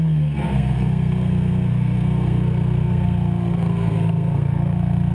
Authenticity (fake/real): fake